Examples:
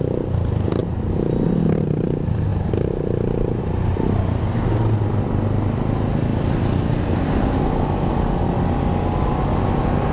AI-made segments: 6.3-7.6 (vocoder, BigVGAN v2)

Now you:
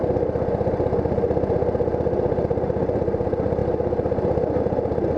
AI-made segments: none

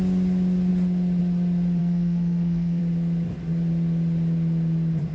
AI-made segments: 1.8-2.8 (codec, SNAC)

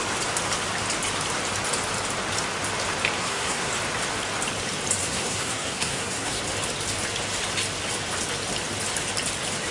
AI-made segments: 3.2-3.7 (codec, SNAC); 5.0-6.4

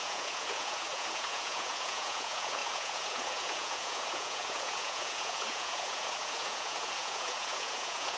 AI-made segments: 0.0-8.2 (vocoder, Vocos)

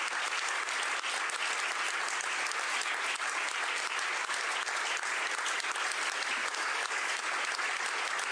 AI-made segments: 6.4-7.2 (codec, DAC)

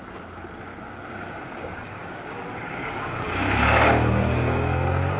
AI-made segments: 1.4-5.2 (codec, DAC)

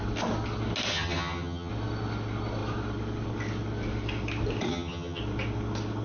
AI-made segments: 0.9-1.7 (vocoder, HiFi-GAN); 4.7-5.2